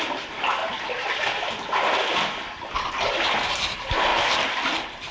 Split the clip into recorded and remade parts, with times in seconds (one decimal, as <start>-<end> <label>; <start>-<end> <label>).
0.0-5.1 recorded